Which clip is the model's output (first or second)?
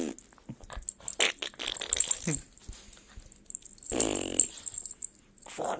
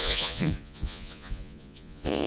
second